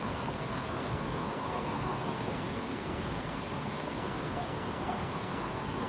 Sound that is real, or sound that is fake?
fake